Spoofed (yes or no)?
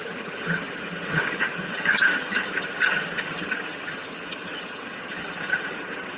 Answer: yes